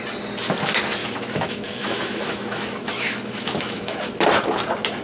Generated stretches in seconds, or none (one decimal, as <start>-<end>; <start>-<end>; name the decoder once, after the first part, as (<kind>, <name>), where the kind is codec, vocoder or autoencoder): 1.0-4.0 (autoencoder, DAC-VAE)